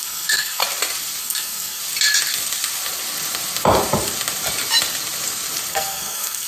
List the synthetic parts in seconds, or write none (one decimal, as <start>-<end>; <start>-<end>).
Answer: 0.0-0.6; 1.2-1.8; 5.7-6.5